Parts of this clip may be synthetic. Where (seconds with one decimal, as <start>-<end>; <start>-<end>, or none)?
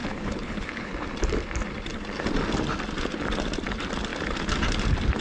0.0-0.9